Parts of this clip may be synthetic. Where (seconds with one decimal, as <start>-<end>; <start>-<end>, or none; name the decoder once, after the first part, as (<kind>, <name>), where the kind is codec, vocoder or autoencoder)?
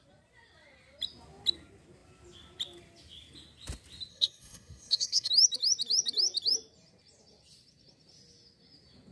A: 4.1-5.3 (codec, SNAC)